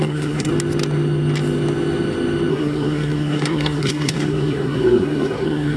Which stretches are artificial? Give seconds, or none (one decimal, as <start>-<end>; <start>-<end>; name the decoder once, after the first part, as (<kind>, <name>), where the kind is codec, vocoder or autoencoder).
0.0-0.5 (codec, SNAC); 2.5-5.8